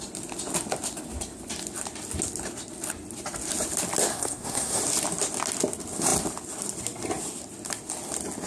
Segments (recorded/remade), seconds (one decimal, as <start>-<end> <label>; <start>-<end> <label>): 0.0-4.1 recorded; 4.1-4.8 remade; 4.8-8.5 recorded